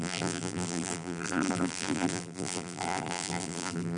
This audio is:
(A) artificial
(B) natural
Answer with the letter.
A